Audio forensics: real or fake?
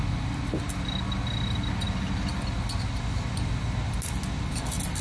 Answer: real